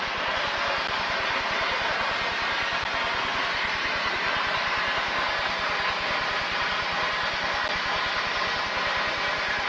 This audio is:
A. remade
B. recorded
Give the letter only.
B